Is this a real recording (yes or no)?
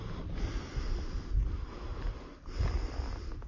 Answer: yes